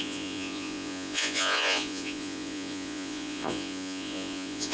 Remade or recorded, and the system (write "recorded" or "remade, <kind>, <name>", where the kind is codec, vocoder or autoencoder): remade, vocoder, Vocos